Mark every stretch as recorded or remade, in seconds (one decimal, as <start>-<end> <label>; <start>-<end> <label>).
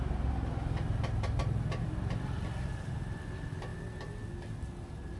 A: 0.0-2.2 remade; 2.2-5.2 recorded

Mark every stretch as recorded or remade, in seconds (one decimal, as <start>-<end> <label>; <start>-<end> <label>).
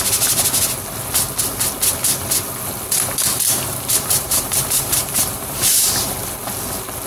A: 0.0-3.3 recorded; 3.3-5.7 remade; 5.7-7.1 recorded